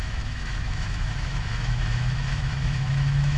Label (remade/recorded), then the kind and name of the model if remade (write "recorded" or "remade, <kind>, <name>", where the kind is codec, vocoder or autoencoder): remade, autoencoder, DAC-VAE